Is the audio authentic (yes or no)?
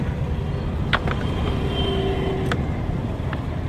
yes